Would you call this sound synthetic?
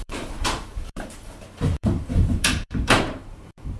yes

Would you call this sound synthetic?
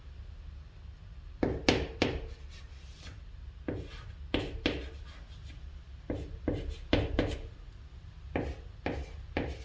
no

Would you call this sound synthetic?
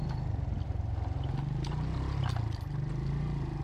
no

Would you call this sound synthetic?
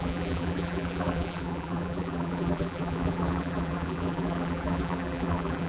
yes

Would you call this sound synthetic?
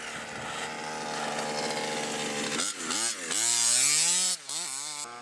no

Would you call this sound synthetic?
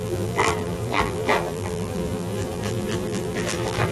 yes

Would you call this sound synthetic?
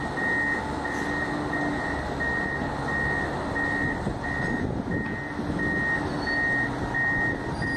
no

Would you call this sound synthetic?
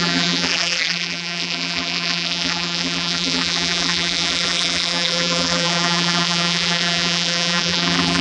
yes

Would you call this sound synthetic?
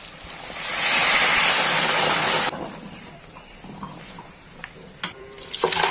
yes